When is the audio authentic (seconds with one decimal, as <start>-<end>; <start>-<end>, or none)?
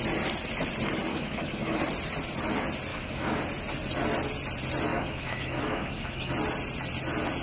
0.0-1.1; 1.8-2.9; 3.4-4.9; 6.3-7.4